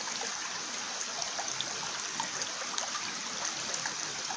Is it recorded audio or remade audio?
recorded